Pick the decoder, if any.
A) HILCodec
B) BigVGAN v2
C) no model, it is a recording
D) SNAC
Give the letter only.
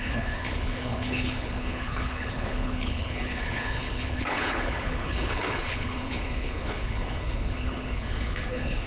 A